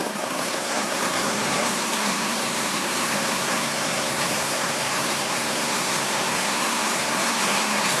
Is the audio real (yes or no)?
no